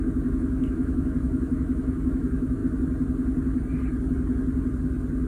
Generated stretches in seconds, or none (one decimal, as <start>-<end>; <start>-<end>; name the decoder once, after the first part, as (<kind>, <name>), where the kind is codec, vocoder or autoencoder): 0.0-2.6 (autoencoder, DAC-VAE)